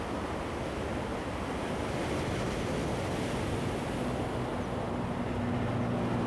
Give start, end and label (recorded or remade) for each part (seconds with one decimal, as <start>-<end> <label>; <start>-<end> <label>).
0.0-6.3 recorded